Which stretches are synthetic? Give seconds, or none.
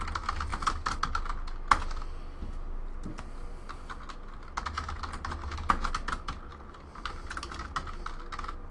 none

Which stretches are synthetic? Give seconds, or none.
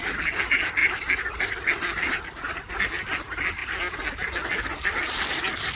none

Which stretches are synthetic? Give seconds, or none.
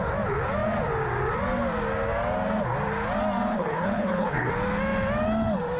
3.5-4.5 (codec, HILCodec)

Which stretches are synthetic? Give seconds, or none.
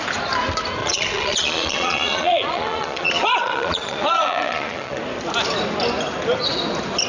0.8-5.0 (vocoder, Vocos)